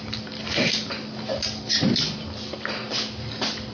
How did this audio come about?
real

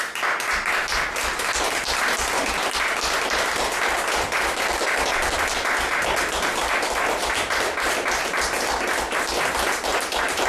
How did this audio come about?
real